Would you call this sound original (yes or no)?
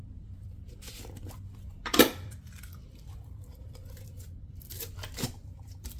no